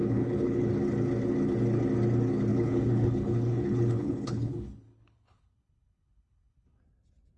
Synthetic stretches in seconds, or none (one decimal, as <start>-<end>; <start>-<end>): 0.0-0.7; 2.5-6.8